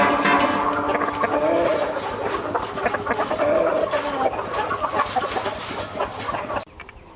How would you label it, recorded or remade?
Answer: recorded